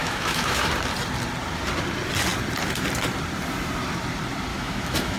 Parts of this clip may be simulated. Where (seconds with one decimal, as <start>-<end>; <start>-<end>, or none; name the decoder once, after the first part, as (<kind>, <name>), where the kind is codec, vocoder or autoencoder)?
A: 0.0-0.6 (autoencoder, DAC-VAE); 4.5-5.2